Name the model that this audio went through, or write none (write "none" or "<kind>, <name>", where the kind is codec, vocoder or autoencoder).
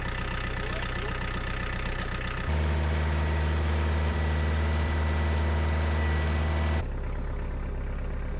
none